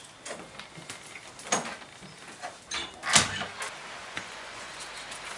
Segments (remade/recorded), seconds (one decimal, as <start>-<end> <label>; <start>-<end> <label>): 0.0-4.0 recorded; 4.0-4.8 remade; 4.8-5.4 recorded